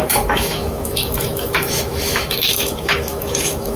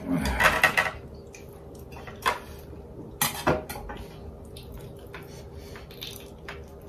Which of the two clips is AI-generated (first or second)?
first